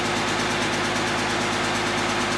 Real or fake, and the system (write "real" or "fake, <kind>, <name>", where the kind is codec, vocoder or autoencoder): real